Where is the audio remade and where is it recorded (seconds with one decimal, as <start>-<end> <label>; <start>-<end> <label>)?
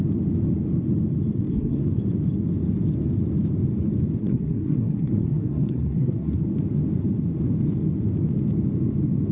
0.0-1.5 recorded; 1.5-2.0 remade; 2.0-4.2 recorded; 4.2-6.4 remade; 6.4-9.3 recorded